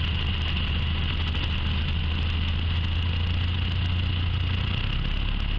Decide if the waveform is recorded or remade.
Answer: recorded